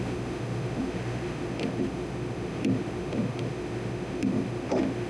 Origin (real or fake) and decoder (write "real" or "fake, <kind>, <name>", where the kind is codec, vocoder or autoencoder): fake, autoencoder, DAC-VAE